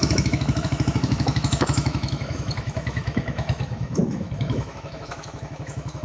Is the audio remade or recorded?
remade